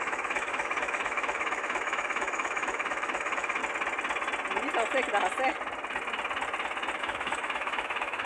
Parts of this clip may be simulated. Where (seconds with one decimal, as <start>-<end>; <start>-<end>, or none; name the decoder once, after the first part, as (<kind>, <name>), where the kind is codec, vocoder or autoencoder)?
0.0-3.6 (autoencoder, DAC-VAE); 7.0-8.3

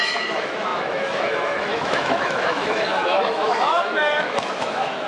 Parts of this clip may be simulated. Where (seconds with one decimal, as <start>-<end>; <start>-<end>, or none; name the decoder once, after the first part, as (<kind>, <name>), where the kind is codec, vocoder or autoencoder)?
0.0-5.1 (autoencoder, DAC-VAE)

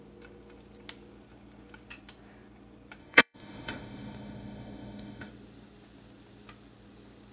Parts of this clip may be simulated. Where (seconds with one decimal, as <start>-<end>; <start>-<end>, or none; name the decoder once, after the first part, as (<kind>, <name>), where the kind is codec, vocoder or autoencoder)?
3.0-5.3 (autoencoder, DAC-VAE)

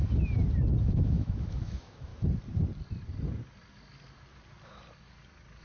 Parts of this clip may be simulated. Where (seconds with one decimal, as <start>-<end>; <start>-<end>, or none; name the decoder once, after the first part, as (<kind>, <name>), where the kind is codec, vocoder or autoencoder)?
0.8-2.1 (autoencoder, DAC-VAE)

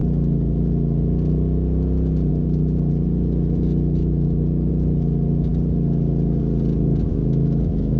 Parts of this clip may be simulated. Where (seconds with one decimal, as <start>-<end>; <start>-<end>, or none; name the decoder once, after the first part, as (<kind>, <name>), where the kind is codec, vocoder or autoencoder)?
4.0-4.7 (autoencoder, DAC-VAE); 7.1-8.0

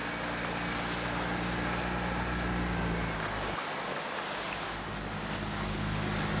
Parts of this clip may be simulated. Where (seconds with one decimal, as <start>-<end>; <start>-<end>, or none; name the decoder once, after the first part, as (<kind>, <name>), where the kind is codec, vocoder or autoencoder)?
none

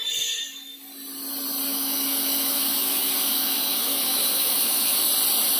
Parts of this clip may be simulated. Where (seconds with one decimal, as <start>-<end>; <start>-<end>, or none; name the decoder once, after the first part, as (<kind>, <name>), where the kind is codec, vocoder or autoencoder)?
1.7-5.1 (autoencoder, DAC-VAE)